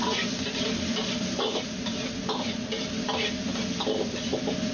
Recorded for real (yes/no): yes